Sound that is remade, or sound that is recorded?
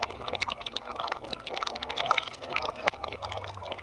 remade